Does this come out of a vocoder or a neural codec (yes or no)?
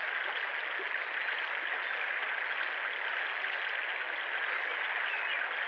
no